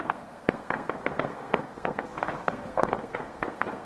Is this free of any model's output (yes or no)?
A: no